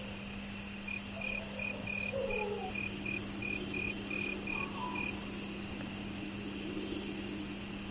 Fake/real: real